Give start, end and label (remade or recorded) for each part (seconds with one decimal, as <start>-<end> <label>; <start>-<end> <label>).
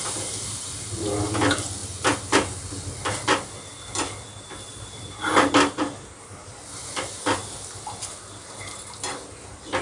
0.0-9.8 recorded